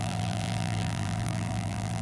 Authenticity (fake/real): fake